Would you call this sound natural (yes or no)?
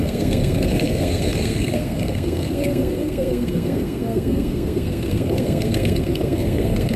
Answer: no